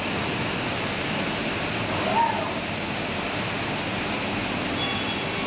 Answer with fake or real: real